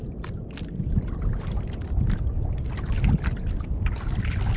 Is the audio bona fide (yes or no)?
yes